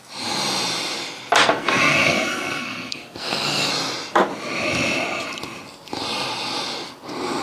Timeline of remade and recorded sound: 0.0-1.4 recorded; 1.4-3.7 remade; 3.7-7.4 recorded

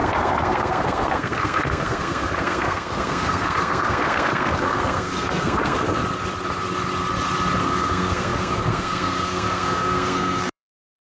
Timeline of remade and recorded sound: 0.0-6.0 remade; 6.0-7.6 recorded; 7.6-11.0 remade